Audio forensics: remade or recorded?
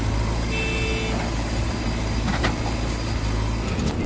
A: recorded